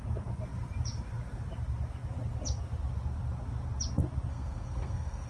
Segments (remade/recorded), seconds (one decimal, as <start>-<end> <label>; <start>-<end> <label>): 0.0-4.3 recorded; 4.3-5.3 remade

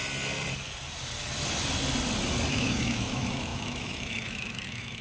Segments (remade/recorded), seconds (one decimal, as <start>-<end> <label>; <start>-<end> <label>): 0.0-2.5 recorded; 2.5-5.0 remade

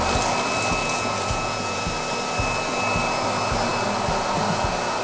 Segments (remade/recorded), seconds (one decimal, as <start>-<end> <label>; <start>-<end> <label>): 0.0-0.8 recorded; 0.8-1.9 remade; 1.9-5.0 recorded

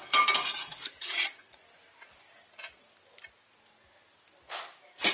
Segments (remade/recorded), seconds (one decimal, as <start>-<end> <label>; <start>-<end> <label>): 0.0-1.0 recorded; 1.0-1.6 remade; 1.6-5.1 recorded

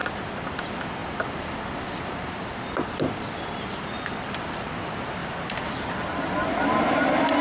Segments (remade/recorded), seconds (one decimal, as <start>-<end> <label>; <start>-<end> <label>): 0.0-0.6 remade; 0.6-1.0 recorded; 1.0-2.8 remade; 2.8-5.2 recorded; 5.2-6.6 remade; 6.6-7.4 recorded

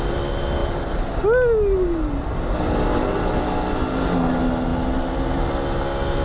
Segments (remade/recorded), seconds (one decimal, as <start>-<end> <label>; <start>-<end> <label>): 0.0-6.2 recorded

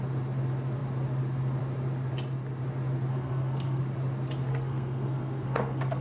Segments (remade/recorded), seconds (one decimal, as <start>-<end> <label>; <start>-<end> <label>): 0.0-3.1 recorded; 3.1-3.8 remade; 3.8-4.5 recorded; 4.5-6.0 remade